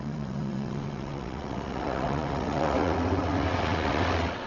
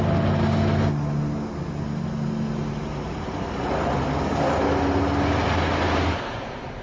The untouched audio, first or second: second